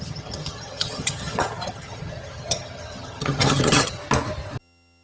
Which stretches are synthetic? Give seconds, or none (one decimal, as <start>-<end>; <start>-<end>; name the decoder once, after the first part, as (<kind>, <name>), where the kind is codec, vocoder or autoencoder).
0.0-4.0 (vocoder, HiFi-GAN); 4.6-5.0